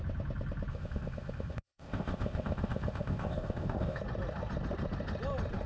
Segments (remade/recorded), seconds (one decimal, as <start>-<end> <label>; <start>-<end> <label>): 0.0-0.7 recorded; 0.7-4.0 remade; 4.0-5.7 recorded

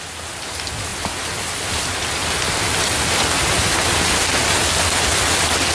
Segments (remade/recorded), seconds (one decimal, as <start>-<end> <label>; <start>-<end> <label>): 0.0-5.7 recorded

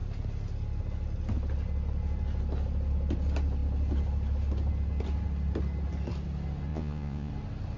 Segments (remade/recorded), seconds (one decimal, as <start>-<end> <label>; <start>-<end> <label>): 0.0-6.7 recorded; 6.7-7.3 remade; 7.3-7.8 recorded

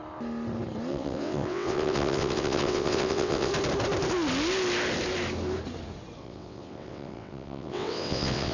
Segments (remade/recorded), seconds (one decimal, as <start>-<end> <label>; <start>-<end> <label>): 0.0-0.9 recorded; 0.9-3.5 remade; 3.5-6.2 recorded; 6.2-8.5 remade

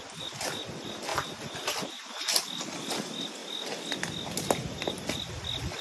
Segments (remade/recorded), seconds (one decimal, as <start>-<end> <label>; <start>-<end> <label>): 0.0-5.8 recorded